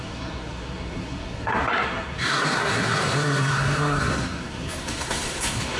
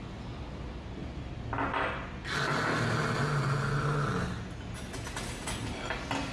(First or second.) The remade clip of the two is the first